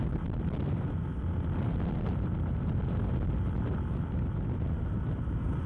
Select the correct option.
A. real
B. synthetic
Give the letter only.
A